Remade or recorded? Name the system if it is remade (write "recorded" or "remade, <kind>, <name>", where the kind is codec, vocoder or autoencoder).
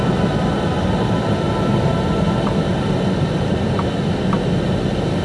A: recorded